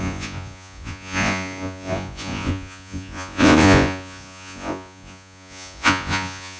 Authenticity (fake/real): fake